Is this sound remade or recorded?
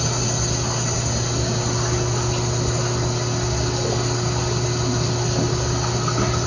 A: recorded